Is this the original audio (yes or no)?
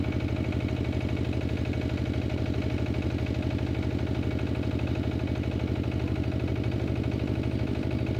yes